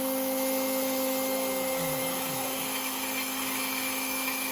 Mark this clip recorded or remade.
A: remade